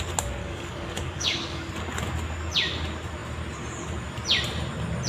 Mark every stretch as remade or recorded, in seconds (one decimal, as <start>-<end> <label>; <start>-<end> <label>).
0.0-0.4 recorded; 0.4-1.7 remade; 1.7-5.1 recorded